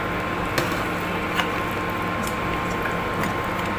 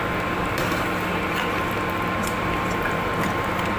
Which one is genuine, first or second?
first